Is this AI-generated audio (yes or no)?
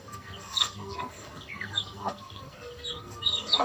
yes